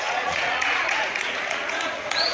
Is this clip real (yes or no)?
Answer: no